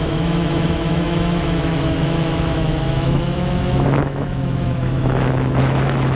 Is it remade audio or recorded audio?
remade